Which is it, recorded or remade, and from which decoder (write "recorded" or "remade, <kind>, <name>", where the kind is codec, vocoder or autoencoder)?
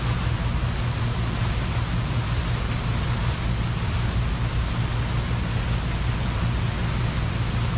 recorded